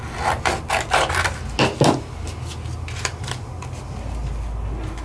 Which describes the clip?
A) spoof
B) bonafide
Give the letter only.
B